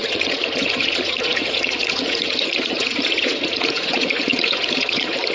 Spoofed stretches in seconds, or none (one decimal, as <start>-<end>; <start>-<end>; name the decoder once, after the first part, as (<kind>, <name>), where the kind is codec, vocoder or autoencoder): 0.0-5.3 (vocoder, Vocos)